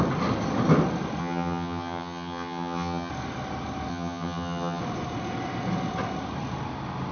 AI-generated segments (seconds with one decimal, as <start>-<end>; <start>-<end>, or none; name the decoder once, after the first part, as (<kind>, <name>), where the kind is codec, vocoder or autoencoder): 1.2-3.1 (vocoder, HiFi-GAN); 3.9-4.8